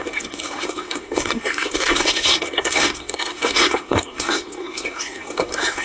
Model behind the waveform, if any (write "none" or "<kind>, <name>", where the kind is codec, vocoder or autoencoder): codec, SNAC